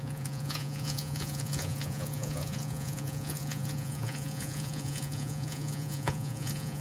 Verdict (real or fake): fake